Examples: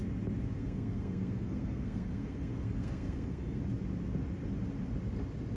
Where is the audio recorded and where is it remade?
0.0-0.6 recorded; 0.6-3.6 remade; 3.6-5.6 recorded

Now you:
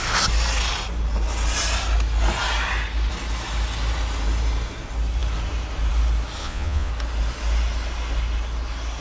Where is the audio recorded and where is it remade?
0.0-6.4 recorded; 6.4-6.9 remade; 6.9-9.0 recorded

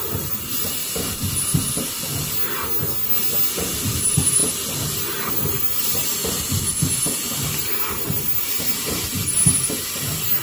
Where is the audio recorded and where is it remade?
0.0-0.8 remade; 0.8-3.5 recorded; 3.5-4.4 remade; 4.4-5.3 recorded; 5.3-6.2 remade; 6.2-7.2 recorded; 7.2-10.4 remade

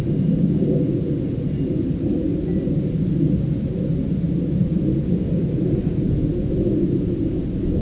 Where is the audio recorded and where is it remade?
0.0-7.8 recorded

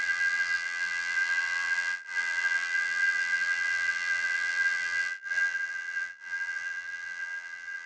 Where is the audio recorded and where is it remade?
0.0-7.9 remade